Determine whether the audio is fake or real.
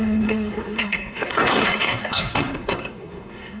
fake